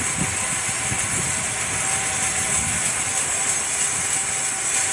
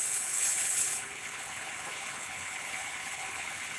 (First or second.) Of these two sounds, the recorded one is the first